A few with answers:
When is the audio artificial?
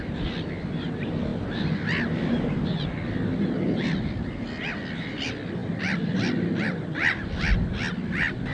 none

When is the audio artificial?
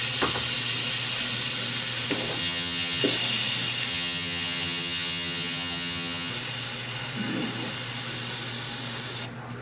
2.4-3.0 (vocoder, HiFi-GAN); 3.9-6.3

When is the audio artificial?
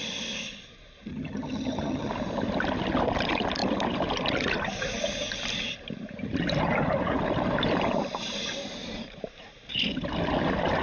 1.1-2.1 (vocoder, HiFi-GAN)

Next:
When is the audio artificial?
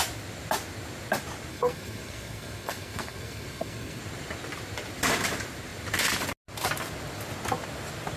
1.5-4.0 (codec, SNAC)